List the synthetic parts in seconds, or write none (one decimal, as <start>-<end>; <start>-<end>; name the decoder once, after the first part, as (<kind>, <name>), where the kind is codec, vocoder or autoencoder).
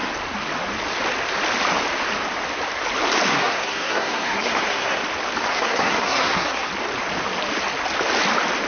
3.3-5.0 (codec, SNAC); 5.5-6.7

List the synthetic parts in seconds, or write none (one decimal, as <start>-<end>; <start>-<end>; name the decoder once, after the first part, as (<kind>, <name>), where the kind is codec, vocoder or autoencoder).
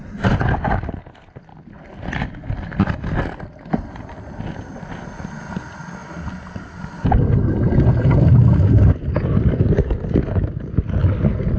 none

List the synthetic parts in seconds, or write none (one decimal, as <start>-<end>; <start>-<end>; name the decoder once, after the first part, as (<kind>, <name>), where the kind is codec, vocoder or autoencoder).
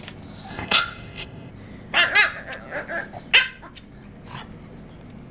0.5-1.5 (codec, ZipCodec)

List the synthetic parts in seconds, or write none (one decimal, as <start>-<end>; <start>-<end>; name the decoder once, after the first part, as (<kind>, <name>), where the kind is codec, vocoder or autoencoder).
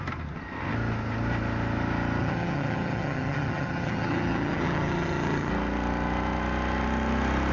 2.2-5.5 (vocoder, HiFi-GAN)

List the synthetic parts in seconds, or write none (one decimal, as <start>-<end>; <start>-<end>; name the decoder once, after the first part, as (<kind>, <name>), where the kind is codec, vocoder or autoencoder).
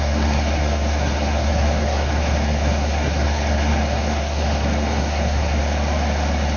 0.0-5.6 (codec, SNAC)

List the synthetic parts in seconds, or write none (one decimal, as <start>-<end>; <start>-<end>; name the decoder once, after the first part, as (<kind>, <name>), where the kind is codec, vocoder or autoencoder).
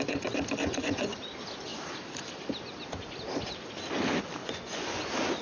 0.6-1.2 (vocoder, Vocos); 4.4-5.0